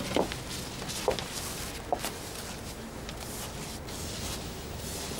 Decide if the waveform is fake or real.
real